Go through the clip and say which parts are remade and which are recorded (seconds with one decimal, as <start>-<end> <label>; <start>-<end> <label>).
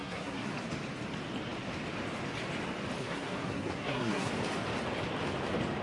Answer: 0.0-0.5 remade; 0.5-3.0 recorded; 3.0-4.3 remade; 4.3-5.8 recorded